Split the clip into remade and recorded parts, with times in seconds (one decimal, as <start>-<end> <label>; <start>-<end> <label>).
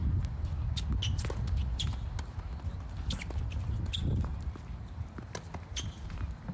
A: 0.0-4.3 recorded; 4.3-5.2 remade; 5.2-6.5 recorded